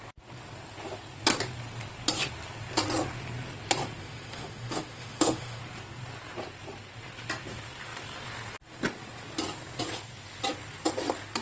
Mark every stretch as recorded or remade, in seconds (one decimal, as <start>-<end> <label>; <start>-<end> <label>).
0.0-4.0 recorded; 4.0-5.6 remade; 5.6-11.4 recorded